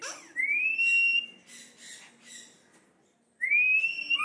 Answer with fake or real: real